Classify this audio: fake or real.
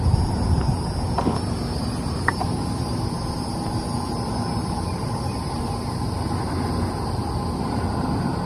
real